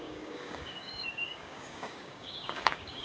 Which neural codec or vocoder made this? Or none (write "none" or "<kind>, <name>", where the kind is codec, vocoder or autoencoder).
codec, DAC